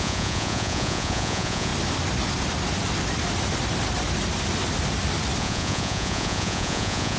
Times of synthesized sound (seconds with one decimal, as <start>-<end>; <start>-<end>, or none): 0.0-1.7; 5.4-7.2